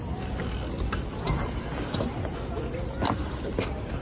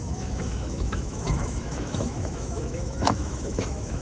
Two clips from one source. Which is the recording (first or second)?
first